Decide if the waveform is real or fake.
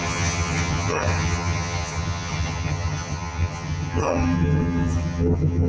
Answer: fake